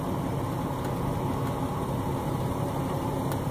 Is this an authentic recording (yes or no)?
yes